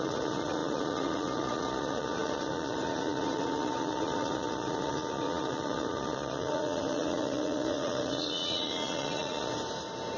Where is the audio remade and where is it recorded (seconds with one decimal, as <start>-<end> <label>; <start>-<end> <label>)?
0.0-9.5 remade; 9.5-10.2 recorded